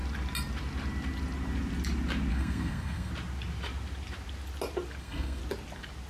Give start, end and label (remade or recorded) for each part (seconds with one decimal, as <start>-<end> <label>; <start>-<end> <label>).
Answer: 0.0-2.3 recorded; 2.3-3.1 remade; 3.1-5.0 recorded; 5.0-5.4 remade; 5.4-6.1 recorded